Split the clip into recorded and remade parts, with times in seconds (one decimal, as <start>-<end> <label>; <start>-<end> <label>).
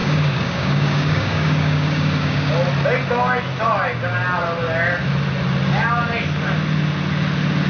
0.0-2.5 remade; 2.5-7.7 recorded